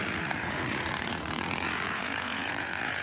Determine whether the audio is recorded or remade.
remade